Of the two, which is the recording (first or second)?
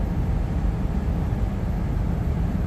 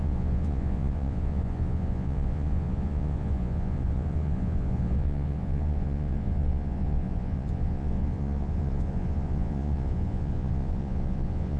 first